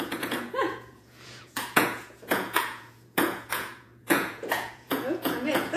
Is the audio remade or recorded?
remade